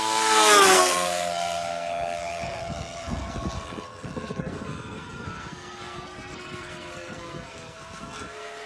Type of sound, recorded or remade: remade